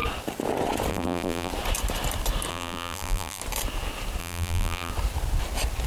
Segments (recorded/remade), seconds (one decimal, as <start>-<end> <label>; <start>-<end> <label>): 0.0-0.9 recorded; 0.9-1.5 remade; 1.5-2.5 recorded; 2.5-3.4 remade; 3.4-4.2 recorded; 4.2-4.9 remade; 4.9-5.9 recorded